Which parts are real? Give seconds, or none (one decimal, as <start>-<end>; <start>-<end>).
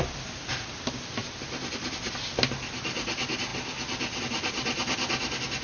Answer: 0.0-5.6